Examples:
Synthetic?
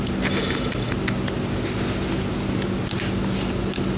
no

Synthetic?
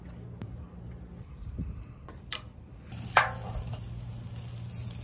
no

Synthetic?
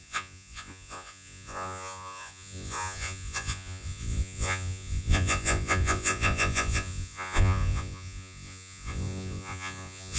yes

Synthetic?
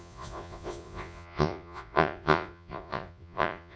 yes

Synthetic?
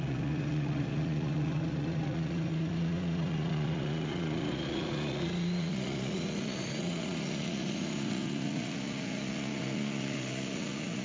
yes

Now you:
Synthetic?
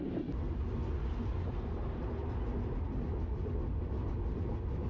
no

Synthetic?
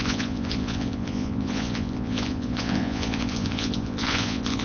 yes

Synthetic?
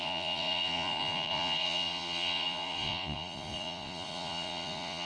yes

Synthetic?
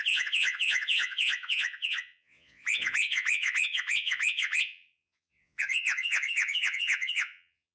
yes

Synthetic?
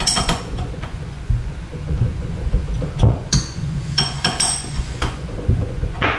yes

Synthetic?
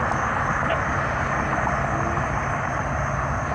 no